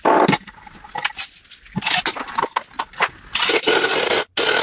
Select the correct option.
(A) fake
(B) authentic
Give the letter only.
B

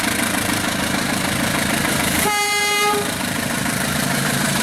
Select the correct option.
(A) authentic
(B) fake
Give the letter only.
B